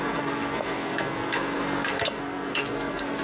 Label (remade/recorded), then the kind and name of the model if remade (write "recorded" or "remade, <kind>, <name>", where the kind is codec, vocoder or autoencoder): remade, codec, SNAC